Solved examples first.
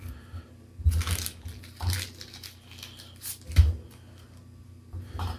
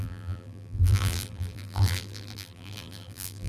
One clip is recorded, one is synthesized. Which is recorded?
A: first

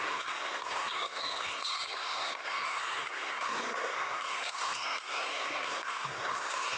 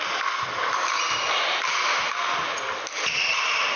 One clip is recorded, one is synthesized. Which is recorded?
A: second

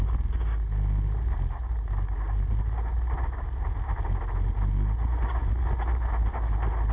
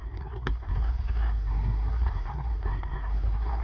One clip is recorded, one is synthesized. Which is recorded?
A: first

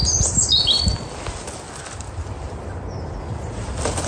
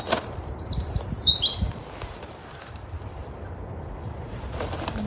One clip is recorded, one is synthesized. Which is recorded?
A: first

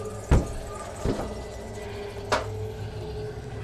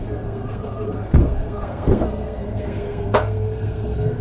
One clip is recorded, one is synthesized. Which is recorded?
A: first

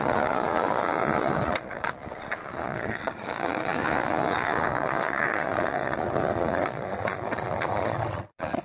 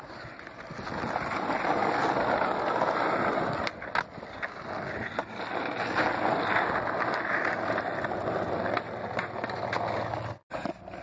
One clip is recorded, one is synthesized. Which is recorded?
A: second